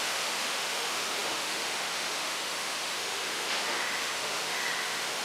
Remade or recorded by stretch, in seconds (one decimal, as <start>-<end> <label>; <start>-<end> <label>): 0.0-5.2 remade